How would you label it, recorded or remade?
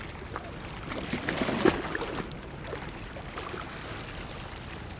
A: recorded